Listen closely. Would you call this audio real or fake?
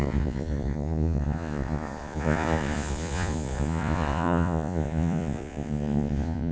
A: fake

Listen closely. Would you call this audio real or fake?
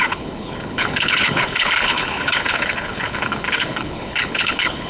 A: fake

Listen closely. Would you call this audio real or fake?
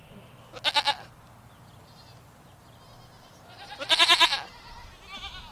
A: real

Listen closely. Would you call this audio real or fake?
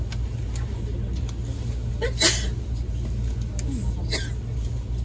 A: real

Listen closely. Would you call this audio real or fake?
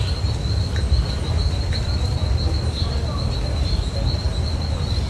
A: real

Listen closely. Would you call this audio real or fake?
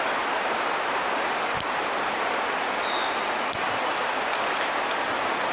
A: real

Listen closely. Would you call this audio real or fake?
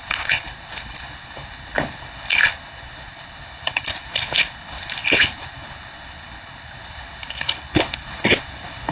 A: fake